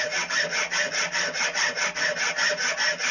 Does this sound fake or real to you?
real